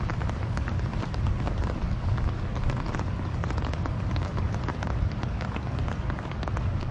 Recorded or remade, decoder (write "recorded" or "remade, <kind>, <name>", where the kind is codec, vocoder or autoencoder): remade, codec, DAC